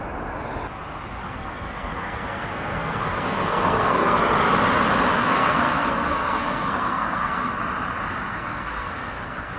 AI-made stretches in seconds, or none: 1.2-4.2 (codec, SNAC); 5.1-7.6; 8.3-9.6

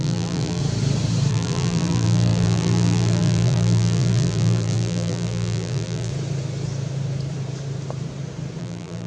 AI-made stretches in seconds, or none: 0.0-0.6 (vocoder, BigVGAN v2); 1.3-6.1; 8.6-9.1

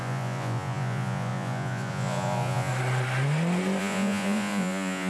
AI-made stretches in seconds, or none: 0.0-2.7 (vocoder, Vocos); 3.8-5.1

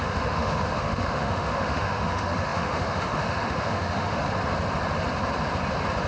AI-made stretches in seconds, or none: 0.0-4.2 (autoencoder, DAC-VAE)

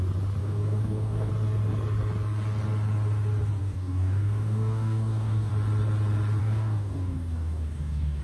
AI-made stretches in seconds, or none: 0.4-1.3 (codec, DAC); 3.6-5.5; 6.4-8.2

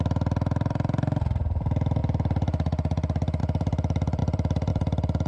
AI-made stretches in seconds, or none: 0.0-2.0 (vocoder, BigVGAN v2); 3.4-5.3